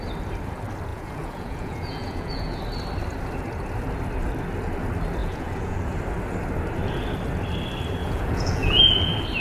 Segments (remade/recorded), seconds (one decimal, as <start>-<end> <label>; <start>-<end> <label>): 0.0-0.9 recorded; 0.9-2.6 remade; 2.6-5.2 recorded; 5.2-5.8 remade; 5.8-8.0 recorded; 8.0-8.8 remade; 8.8-9.4 recorded